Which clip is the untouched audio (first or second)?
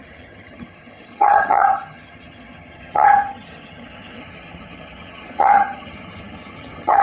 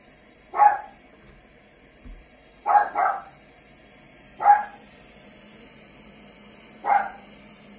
second